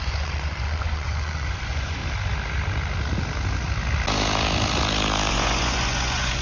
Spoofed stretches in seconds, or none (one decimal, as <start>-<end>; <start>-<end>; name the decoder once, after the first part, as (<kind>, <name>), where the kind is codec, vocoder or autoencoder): 0.0-2.0 (vocoder, Vocos); 5.3-6.4